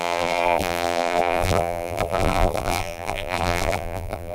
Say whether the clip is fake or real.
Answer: fake